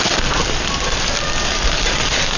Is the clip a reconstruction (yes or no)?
no